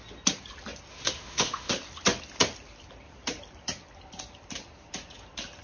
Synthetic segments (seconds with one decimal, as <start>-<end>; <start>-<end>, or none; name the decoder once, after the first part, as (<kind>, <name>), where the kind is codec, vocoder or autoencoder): 0.9-1.7 (autoencoder, DAC-VAE)